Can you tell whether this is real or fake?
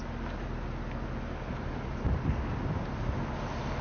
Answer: real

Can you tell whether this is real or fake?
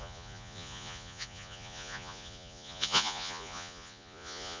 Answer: fake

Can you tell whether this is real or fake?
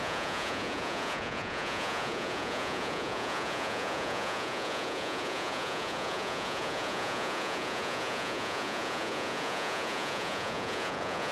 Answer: fake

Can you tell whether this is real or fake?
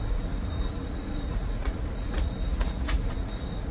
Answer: fake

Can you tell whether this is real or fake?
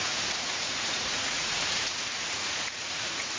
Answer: fake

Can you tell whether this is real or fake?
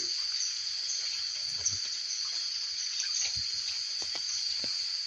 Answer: fake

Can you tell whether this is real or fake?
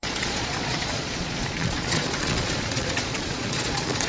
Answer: fake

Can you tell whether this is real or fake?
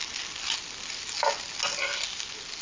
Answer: real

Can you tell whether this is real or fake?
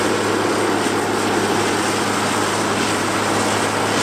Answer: real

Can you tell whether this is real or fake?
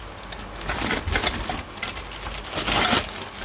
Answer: real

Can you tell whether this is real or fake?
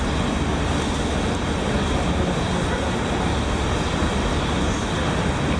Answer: real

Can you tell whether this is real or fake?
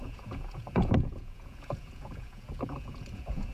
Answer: fake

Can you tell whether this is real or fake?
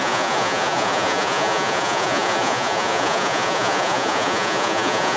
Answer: fake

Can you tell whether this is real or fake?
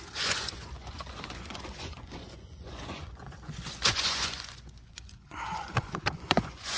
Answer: fake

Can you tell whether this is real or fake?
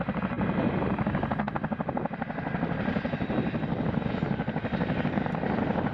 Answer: real